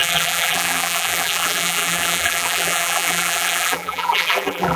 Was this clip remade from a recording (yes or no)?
yes